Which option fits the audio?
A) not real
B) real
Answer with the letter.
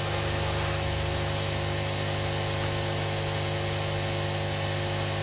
B